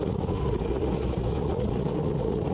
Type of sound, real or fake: fake